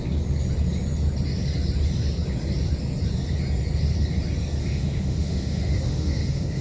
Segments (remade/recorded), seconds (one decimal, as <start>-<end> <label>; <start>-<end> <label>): 0.0-4.6 recorded; 4.6-6.6 remade